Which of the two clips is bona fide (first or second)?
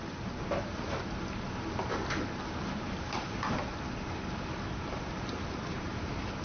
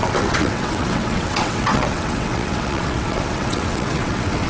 first